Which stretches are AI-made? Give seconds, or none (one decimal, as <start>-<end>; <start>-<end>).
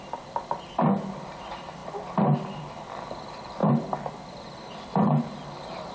none